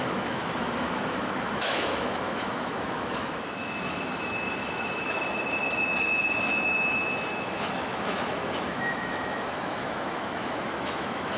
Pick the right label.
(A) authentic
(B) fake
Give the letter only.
B